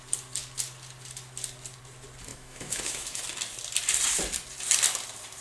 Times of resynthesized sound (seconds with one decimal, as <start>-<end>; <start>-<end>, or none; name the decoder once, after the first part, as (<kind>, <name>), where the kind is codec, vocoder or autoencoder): 2.3-3.2 (autoencoder, DAC-VAE)